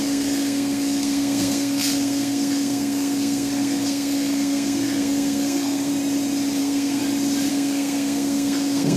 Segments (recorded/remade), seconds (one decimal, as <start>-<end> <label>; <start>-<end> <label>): 0.0-5.9 remade; 5.9-6.6 recorded; 6.6-7.0 remade; 7.0-7.5 recorded; 7.5-9.0 remade